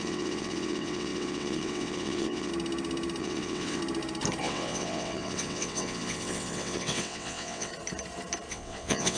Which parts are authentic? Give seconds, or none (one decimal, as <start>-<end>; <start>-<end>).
2.5-3.2; 3.8-4.4; 7.7-8.5